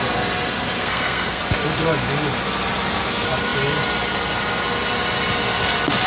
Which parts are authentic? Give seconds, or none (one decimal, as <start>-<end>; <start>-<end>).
0.0-0.8; 1.4-6.1